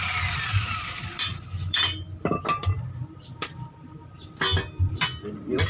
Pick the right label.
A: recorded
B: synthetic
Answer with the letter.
B